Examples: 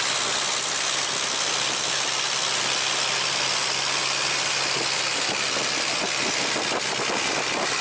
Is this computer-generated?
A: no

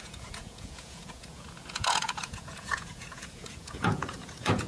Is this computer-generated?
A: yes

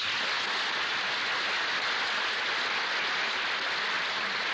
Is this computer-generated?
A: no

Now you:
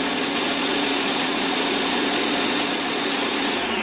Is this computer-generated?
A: yes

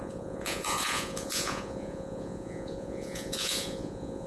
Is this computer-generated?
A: yes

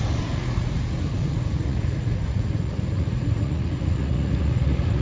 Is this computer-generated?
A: yes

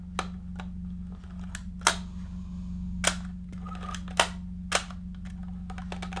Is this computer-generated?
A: no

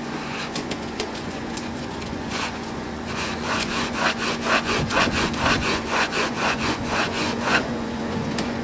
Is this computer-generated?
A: yes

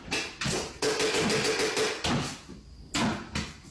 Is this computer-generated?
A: no